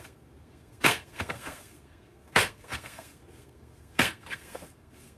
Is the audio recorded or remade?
remade